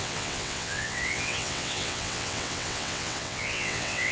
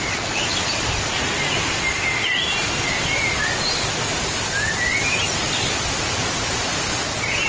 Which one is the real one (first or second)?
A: second